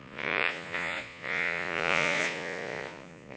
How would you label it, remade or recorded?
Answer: remade